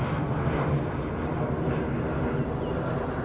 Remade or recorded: recorded